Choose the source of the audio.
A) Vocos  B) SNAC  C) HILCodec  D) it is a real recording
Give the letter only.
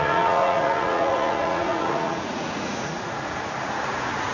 A